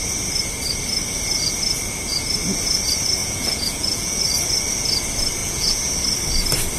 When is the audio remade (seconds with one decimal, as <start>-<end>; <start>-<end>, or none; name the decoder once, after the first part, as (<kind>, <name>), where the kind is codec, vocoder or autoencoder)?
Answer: 3.2-4.2 (vocoder, Vocos); 5.4-5.9